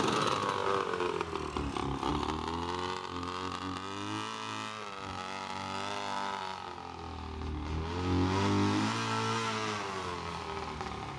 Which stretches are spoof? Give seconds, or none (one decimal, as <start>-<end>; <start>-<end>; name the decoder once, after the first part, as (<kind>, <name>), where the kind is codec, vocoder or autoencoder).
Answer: none